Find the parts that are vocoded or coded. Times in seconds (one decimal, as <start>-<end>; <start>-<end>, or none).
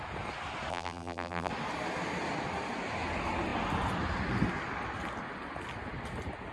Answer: 0.7-1.5